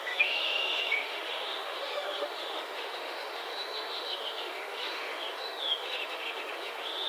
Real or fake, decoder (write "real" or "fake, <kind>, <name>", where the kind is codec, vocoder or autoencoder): fake, autoencoder, DAC-VAE